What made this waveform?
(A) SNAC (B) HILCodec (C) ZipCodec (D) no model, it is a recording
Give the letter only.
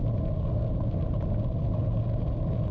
D